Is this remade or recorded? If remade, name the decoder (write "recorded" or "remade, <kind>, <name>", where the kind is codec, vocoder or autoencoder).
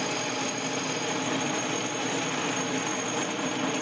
remade, vocoder, BigVGAN v2